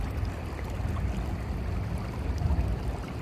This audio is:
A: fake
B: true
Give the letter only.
B